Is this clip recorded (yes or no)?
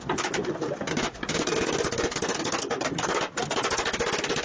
yes